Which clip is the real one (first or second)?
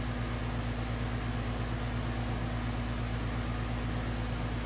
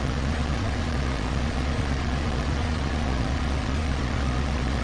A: first